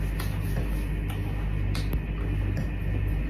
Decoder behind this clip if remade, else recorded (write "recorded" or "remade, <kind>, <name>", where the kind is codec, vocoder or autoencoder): recorded